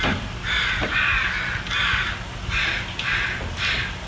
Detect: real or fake real